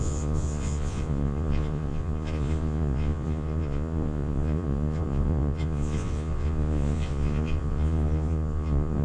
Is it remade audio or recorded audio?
remade